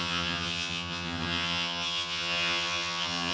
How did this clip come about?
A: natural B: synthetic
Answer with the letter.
B